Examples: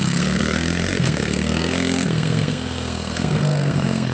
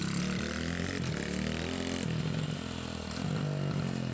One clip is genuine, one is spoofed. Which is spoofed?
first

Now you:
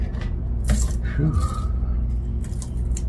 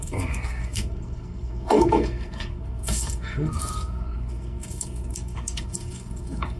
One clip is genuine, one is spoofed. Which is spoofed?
second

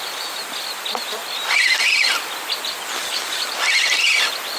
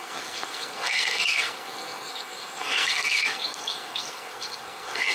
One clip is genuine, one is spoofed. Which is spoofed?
second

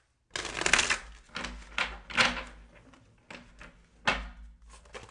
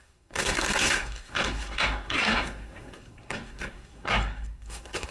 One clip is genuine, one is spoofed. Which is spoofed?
second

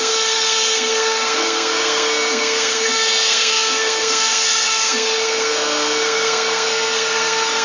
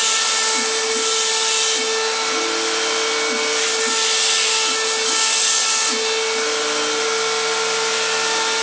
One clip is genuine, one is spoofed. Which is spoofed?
first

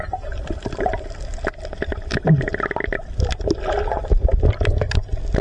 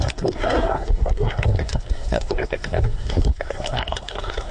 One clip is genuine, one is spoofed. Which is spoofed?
second